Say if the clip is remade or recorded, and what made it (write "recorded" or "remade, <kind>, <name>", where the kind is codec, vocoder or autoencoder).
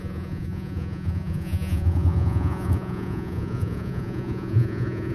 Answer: remade, vocoder, Vocos